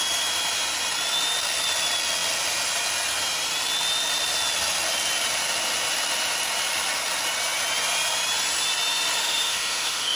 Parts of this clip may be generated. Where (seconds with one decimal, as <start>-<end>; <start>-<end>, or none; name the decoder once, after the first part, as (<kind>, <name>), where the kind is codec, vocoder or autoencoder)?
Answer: 9.2-10.2 (autoencoder, DAC-VAE)